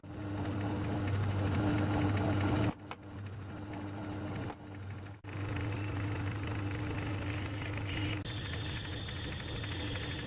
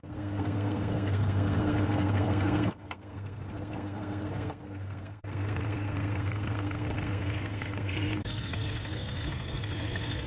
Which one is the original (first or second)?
first